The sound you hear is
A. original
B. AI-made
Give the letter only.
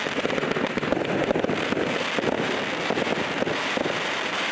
A